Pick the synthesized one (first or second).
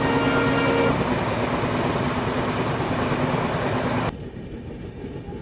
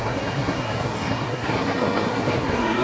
second